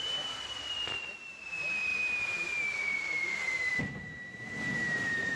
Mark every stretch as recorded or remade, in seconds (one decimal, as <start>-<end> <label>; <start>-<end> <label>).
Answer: 0.0-5.4 recorded